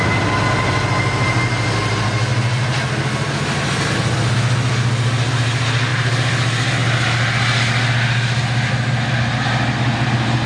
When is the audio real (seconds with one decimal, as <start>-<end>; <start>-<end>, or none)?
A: 0.0-10.5